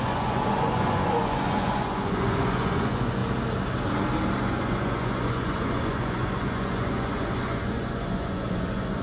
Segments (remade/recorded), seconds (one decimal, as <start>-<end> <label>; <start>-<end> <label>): 0.0-3.2 remade; 3.2-4.4 recorded; 4.4-9.0 remade